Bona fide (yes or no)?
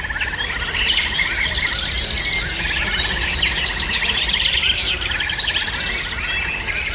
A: yes